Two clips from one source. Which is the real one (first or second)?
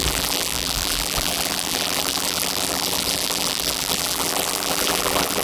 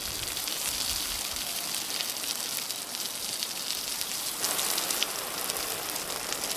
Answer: second